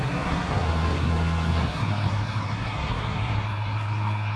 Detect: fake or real fake